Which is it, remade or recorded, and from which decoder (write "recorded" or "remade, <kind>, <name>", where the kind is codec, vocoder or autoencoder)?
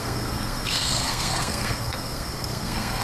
remade, codec, SNAC